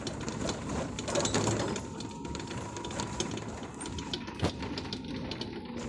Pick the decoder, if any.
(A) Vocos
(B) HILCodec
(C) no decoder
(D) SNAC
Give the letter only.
C